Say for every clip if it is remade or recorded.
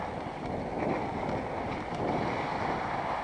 recorded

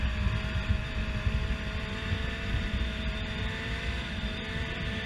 recorded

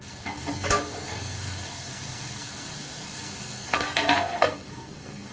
remade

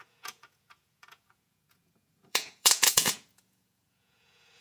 remade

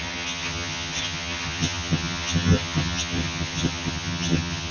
remade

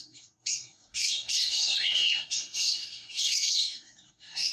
remade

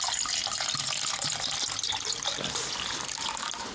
recorded